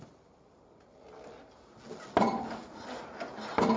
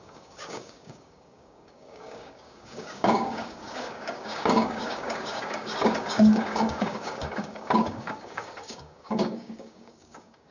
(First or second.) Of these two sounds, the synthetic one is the second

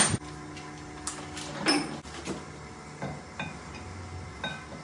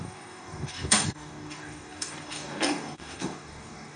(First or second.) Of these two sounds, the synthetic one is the second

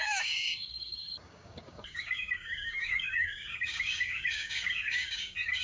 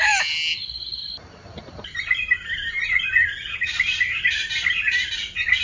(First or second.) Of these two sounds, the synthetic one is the first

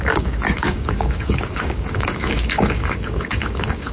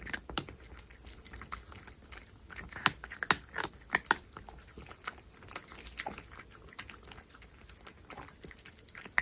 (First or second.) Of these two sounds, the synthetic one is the first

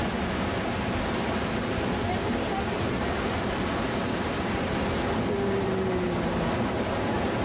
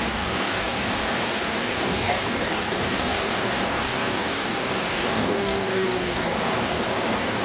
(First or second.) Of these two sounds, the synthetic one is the second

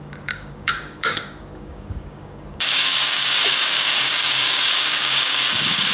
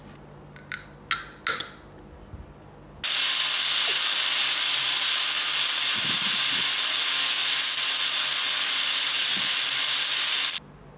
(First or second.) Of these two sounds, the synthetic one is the first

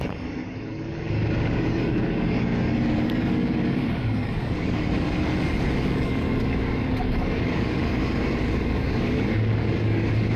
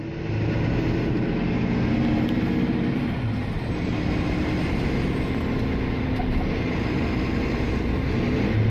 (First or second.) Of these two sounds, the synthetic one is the first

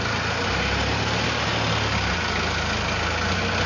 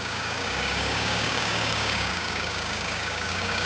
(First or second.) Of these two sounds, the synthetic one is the second